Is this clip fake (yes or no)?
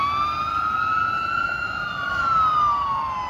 no